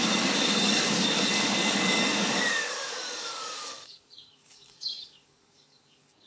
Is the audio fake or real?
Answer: fake